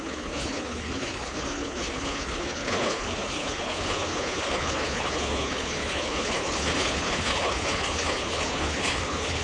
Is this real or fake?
fake